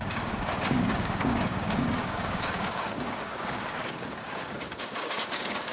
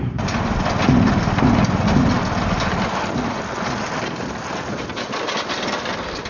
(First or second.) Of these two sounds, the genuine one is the second